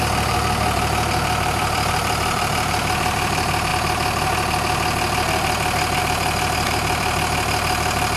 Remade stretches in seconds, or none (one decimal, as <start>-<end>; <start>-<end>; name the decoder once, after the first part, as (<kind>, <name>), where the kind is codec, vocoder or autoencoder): 0.0-3.7 (vocoder, BigVGAN v2); 6.0-8.2